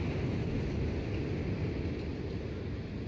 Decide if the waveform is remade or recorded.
recorded